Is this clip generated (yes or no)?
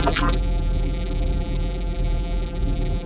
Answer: yes